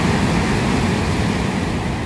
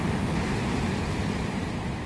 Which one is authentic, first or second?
first